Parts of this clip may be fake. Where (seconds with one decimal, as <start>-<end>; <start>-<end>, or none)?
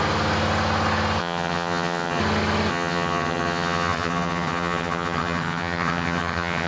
1.2-2.2; 2.7-6.7